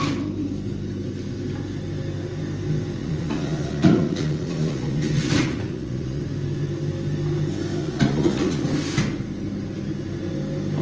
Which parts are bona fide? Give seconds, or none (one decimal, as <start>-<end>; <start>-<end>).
0.0-3.0; 6.2-7.8; 8.7-10.8